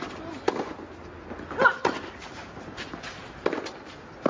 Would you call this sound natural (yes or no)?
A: yes